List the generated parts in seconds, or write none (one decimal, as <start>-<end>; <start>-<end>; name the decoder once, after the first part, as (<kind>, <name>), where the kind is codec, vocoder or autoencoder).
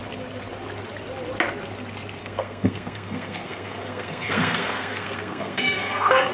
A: 2.2-6.3 (codec, SNAC)